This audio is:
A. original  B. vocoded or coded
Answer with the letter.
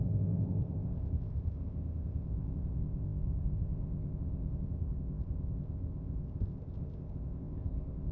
B